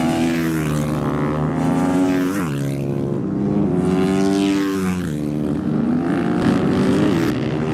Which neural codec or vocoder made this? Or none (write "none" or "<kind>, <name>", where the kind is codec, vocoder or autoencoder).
none